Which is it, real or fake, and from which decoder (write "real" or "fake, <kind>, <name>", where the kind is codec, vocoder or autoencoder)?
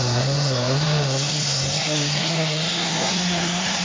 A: fake, codec, SNAC